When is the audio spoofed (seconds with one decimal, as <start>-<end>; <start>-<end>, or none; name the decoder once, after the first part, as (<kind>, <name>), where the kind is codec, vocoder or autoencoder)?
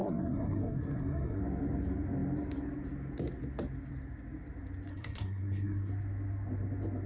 0.0-1.4 (codec, SNAC); 4.9-5.9